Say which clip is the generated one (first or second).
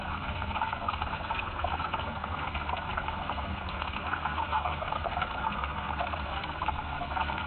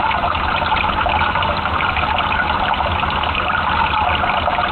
first